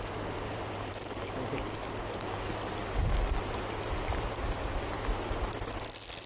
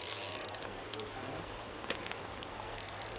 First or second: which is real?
first